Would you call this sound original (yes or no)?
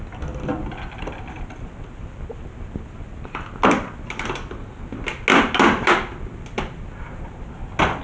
yes